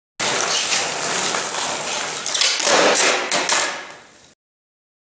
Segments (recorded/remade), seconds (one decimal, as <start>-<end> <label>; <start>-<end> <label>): 0.0-5.1 recorded